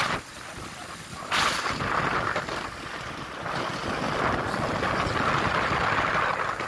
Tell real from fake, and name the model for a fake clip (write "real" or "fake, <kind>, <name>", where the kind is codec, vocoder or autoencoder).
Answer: real